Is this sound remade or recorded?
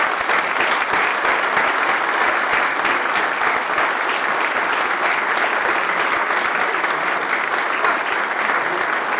recorded